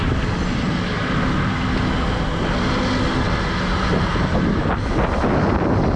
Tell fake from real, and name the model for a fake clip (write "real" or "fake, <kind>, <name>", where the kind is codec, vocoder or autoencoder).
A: real